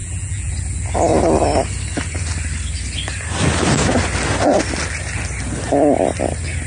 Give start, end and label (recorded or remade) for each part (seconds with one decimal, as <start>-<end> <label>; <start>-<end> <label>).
0.0-0.5 remade; 0.5-6.7 recorded